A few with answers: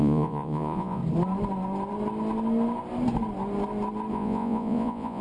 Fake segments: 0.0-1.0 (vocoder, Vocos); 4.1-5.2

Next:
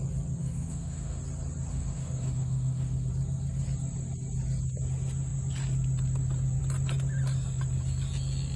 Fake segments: 0.4-1.2 (autoencoder, DAC-VAE); 1.7-3.1

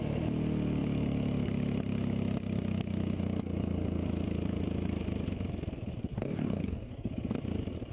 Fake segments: 6.1-7.1 (codec, DAC)

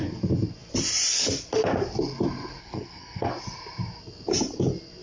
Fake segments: 2.6-3.3 (codec, SNAC)

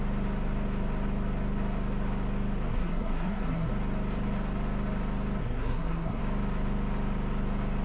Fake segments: 2.7-3.7 (codec, SNAC); 5.4-6.2

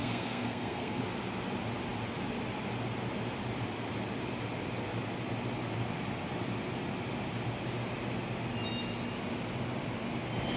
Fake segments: 0.0-1.0 (codec, SNAC)